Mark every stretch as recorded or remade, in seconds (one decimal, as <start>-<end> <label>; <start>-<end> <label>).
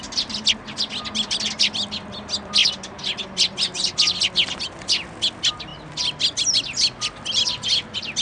0.0-8.2 recorded